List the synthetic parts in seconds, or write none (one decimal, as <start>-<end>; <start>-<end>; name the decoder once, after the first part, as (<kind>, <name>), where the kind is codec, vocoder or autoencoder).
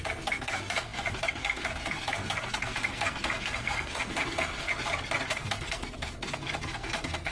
0.0-4.7 (codec, SNAC); 5.3-7.3